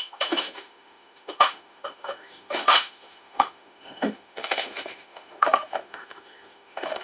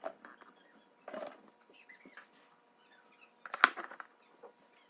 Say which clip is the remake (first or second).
first